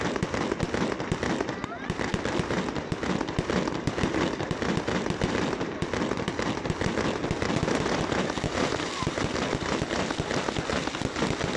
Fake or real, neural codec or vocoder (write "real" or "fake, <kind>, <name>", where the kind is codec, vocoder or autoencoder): fake, vocoder, BigVGAN v2